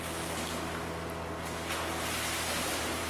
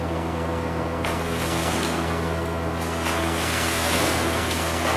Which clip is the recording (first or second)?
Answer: first